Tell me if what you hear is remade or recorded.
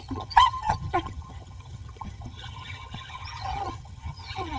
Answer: remade